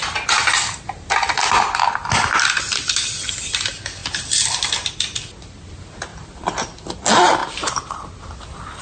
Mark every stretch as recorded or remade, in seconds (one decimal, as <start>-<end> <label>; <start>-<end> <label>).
0.0-6.1 recorded; 6.1-6.7 remade; 6.7-7.4 recorded; 7.4-8.2 remade; 8.2-8.8 recorded